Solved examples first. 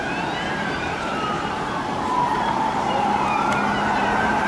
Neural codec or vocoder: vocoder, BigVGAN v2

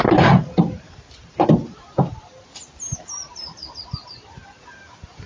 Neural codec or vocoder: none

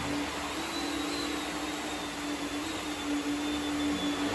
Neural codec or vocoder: none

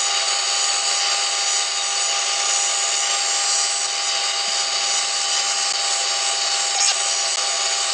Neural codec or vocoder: none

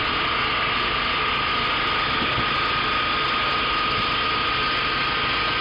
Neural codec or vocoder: none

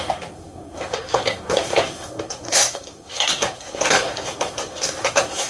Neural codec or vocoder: codec, SNAC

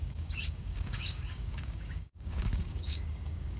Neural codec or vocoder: codec, DAC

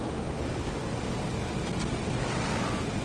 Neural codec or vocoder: none